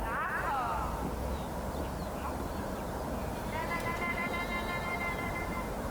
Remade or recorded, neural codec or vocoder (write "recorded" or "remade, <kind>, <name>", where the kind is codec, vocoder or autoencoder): remade, vocoder, BigVGAN v2